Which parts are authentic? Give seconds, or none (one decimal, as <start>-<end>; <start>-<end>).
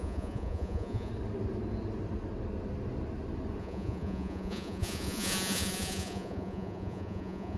1.1-3.6